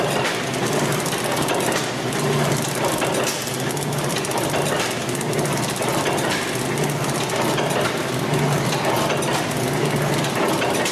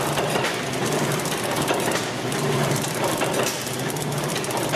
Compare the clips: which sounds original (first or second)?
first